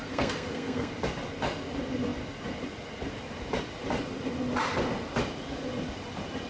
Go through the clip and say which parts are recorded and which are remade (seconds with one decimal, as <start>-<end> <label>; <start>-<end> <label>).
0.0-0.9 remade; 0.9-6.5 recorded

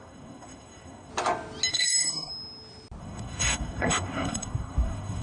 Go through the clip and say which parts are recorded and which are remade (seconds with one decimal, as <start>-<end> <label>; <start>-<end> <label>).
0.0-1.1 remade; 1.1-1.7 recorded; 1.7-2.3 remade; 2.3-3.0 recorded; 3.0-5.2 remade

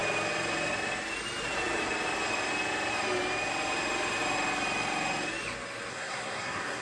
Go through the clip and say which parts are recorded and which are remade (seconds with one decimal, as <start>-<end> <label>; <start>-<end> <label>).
0.0-5.9 recorded; 5.9-6.8 remade

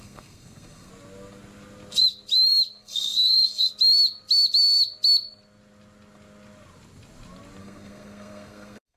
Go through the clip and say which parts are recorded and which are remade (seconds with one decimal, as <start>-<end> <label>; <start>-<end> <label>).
0.0-0.9 remade; 0.9-2.7 recorded; 2.7-3.7 remade; 3.7-7.6 recorded; 7.6-9.0 remade